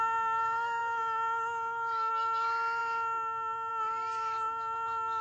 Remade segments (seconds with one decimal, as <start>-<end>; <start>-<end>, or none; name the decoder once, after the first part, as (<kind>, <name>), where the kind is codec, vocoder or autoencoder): none